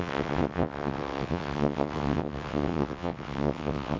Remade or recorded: remade